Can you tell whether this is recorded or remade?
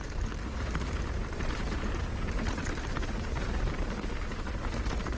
remade